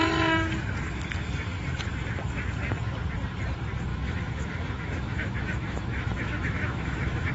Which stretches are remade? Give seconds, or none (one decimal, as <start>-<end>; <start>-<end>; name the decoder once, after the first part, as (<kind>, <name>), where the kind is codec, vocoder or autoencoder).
3.9-7.3 (autoencoder, DAC-VAE)